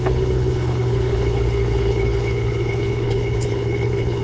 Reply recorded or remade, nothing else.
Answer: remade